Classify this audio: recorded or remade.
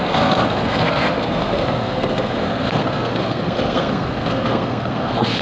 remade